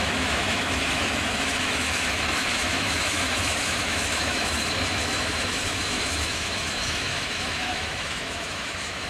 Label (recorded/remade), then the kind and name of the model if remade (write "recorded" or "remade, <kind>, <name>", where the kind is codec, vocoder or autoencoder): remade, autoencoder, DAC-VAE